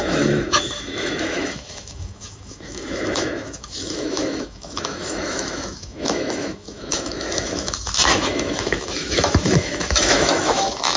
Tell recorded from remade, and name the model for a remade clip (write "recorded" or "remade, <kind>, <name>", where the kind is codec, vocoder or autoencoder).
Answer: remade, autoencoder, DAC-VAE